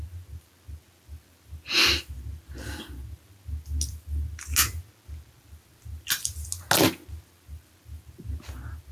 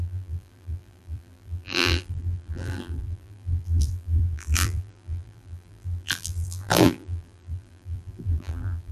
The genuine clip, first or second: first